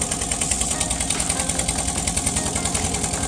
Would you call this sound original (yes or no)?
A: yes